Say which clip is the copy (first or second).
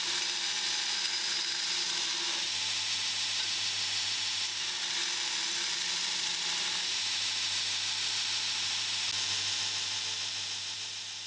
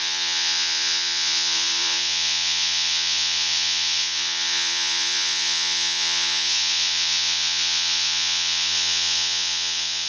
second